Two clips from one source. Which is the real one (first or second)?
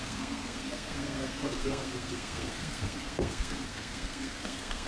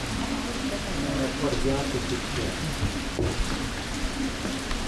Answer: second